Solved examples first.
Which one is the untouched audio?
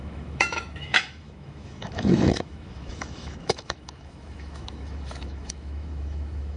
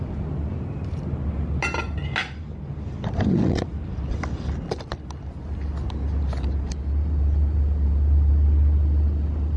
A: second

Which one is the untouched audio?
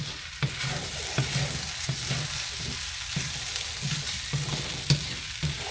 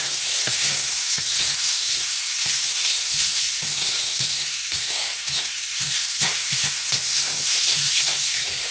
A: first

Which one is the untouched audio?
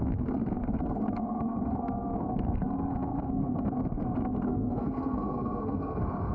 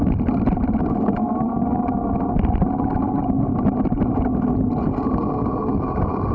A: second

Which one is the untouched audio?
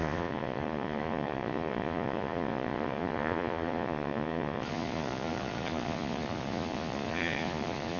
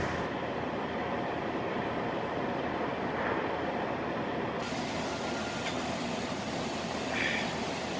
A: second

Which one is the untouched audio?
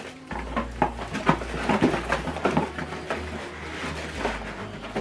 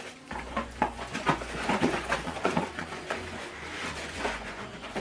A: first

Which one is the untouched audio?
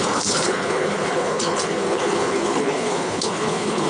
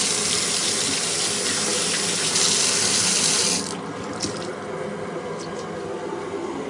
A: second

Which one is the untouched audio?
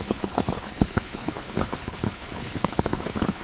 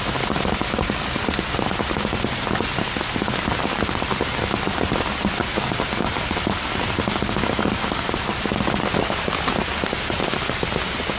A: second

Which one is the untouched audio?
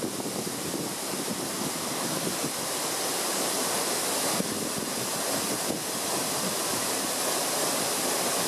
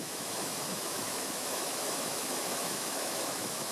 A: first